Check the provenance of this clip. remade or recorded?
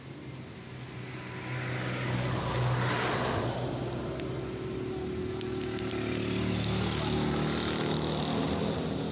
recorded